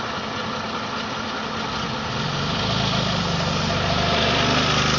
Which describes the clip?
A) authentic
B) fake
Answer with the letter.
A